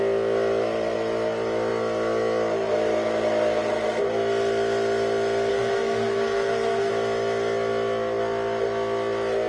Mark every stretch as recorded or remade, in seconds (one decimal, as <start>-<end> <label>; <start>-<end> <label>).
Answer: 0.0-5.5 recorded; 5.5-6.9 remade; 6.9-9.5 recorded